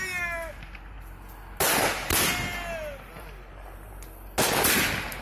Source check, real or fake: real